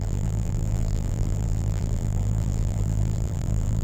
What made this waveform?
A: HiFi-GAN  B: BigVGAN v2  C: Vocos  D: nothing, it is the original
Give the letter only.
B